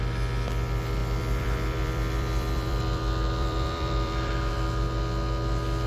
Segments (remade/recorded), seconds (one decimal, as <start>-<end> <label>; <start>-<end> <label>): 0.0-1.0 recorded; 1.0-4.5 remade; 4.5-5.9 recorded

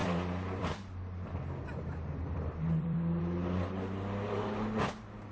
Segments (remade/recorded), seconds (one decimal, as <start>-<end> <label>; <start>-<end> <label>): 0.0-3.2 remade; 3.2-5.3 recorded

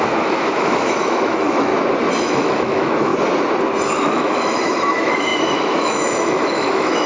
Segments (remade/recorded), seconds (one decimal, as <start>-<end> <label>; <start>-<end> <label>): 0.0-1.7 remade; 1.7-2.2 recorded; 2.2-3.1 remade; 3.1-4.0 recorded; 4.0-7.1 remade

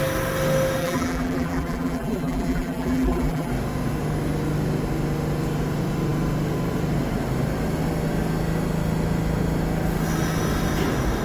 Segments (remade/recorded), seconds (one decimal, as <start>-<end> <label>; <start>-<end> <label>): 0.0-0.8 recorded; 0.8-3.5 remade; 3.5-11.2 recorded

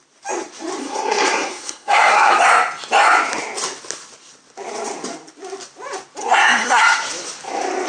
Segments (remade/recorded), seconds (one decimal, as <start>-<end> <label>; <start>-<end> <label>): 0.0-0.8 recorded; 0.8-2.4 remade; 2.4-6.2 recorded; 6.2-6.8 remade; 6.8-7.9 recorded

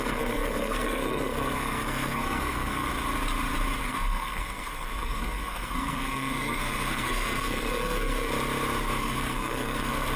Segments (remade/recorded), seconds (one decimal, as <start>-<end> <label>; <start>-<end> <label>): 0.0-2.9 remade; 2.9-3.8 recorded; 3.8-8.3 remade; 8.3-9.0 recorded; 9.0-10.2 remade